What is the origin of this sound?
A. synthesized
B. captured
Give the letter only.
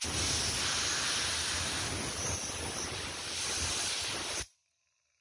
B